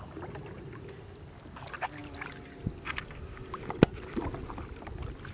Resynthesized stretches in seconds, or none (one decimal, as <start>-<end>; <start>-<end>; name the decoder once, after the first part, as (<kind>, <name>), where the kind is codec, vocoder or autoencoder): none